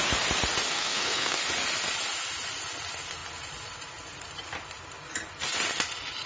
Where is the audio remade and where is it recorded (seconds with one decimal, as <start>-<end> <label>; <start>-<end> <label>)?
0.0-0.7 recorded; 0.7-1.4 remade; 1.4-6.3 recorded